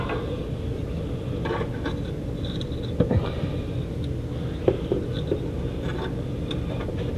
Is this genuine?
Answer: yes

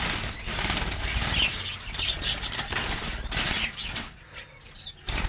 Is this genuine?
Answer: yes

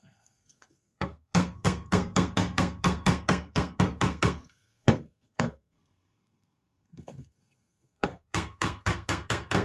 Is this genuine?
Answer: no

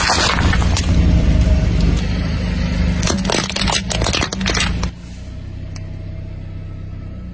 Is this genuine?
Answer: yes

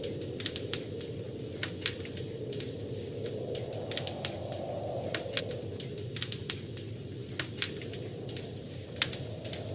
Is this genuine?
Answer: yes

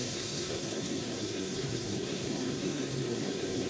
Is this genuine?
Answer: no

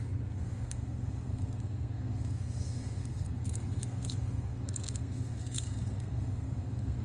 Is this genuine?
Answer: no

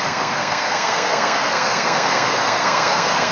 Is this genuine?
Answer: no